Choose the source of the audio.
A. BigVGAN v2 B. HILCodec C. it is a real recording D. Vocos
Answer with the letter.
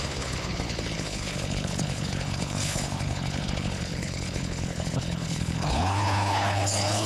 B